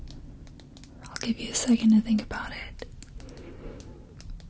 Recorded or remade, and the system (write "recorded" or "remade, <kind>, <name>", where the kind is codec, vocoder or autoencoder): recorded